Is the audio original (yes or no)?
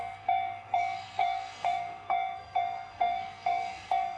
no